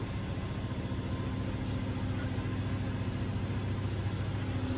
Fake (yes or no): no